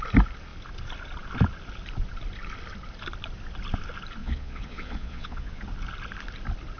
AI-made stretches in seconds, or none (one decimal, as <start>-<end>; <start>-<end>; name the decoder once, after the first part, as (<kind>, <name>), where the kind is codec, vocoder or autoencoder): 4.2-5.6 (vocoder, Vocos)